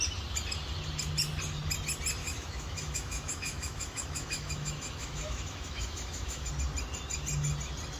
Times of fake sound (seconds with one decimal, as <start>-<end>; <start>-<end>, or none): 2.2-6.5